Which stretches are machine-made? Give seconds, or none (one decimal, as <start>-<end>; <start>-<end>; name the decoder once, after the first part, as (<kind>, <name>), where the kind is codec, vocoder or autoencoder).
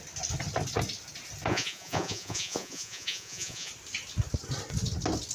1.5-3.7 (vocoder, Vocos)